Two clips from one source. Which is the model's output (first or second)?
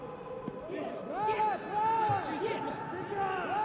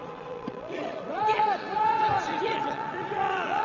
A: second